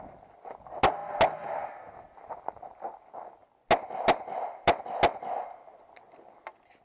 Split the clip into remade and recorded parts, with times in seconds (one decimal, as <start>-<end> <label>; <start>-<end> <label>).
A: 0.0-6.8 recorded